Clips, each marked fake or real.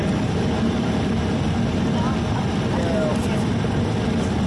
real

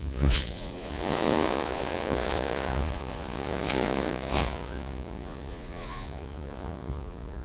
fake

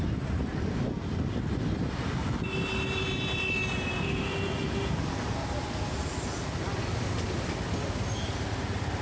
real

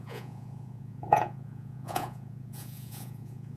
fake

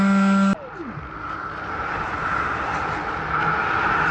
real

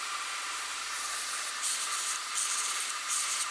fake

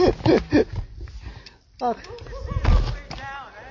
real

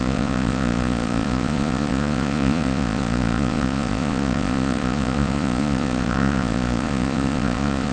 fake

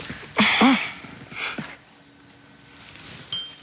real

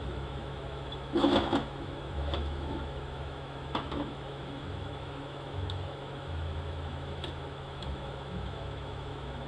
fake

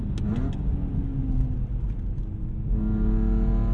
real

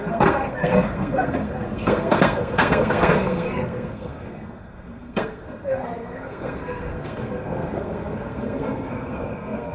fake